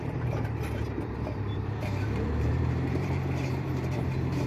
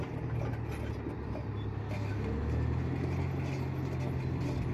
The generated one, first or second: first